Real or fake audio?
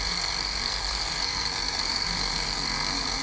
fake